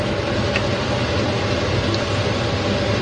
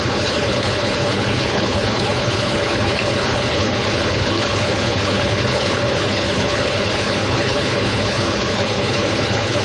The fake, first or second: second